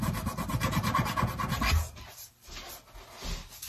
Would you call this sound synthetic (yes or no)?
no